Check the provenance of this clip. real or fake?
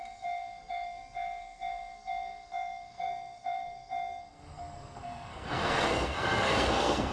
fake